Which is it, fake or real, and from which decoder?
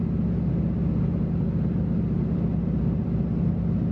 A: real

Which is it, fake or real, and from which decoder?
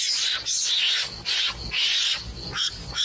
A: real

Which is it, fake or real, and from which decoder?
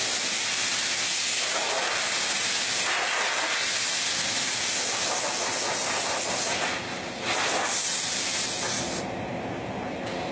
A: real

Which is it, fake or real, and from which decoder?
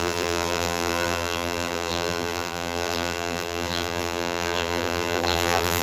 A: fake, vocoder, BigVGAN v2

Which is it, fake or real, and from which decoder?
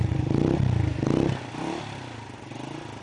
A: real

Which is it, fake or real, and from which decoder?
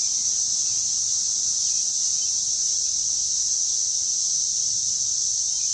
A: real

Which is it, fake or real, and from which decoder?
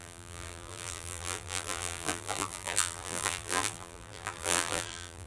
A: fake, vocoder, BigVGAN v2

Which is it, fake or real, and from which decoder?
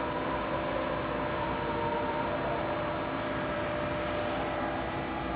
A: fake, vocoder, BigVGAN v2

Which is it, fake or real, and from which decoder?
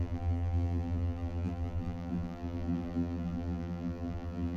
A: fake, vocoder, BigVGAN v2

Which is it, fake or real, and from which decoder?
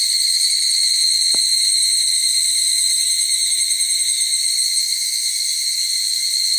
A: real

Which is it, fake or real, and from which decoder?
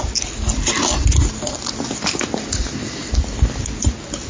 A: real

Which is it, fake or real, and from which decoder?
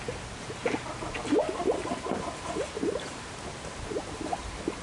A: fake, vocoder, BigVGAN v2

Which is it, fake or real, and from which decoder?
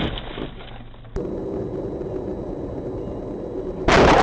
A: real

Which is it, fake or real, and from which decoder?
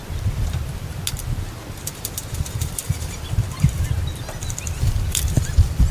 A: real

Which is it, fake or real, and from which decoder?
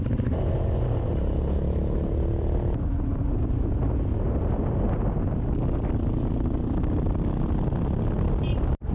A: real